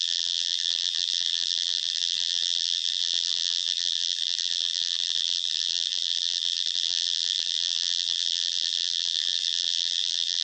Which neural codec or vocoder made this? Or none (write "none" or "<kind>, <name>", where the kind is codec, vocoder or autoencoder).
vocoder, BigVGAN v2